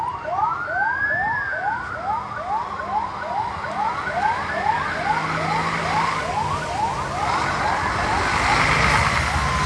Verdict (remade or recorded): recorded